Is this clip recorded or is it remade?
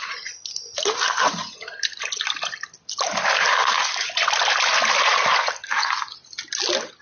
recorded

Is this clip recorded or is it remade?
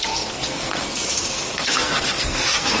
remade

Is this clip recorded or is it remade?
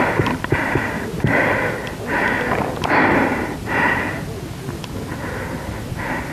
recorded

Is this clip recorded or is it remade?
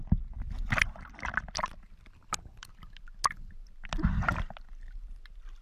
recorded